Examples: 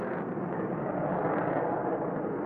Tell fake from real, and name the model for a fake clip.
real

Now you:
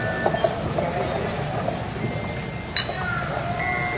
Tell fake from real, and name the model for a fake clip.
real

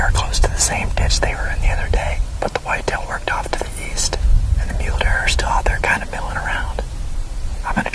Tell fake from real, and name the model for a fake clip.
fake, vocoder, BigVGAN v2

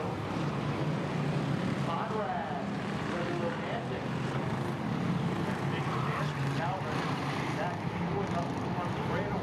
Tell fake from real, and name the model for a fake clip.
real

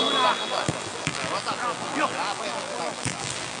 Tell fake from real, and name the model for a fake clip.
fake, vocoder, BigVGAN v2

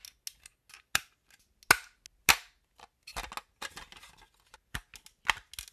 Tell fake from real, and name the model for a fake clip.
real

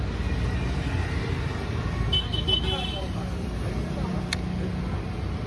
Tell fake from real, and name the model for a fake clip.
real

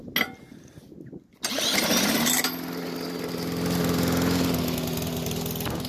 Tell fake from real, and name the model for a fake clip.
real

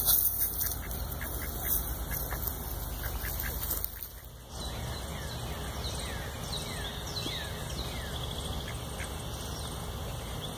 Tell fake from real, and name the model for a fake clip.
real